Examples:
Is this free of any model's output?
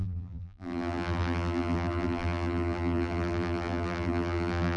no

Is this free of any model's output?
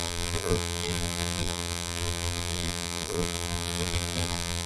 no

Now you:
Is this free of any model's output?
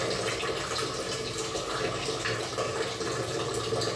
yes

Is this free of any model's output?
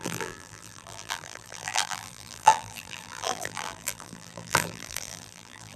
no